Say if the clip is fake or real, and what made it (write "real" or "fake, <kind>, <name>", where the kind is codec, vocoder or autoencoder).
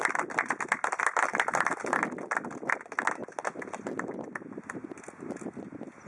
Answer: real